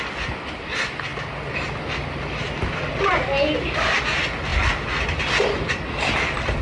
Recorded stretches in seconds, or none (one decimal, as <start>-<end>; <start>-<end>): 0.0-1.1; 4.0-4.5; 5.2-6.6